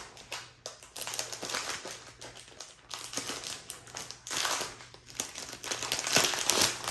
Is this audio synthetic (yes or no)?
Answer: no